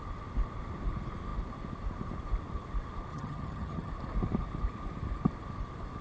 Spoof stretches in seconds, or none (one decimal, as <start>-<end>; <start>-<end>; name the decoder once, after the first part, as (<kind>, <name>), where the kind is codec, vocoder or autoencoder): 3.1-3.9 (vocoder, HiFi-GAN)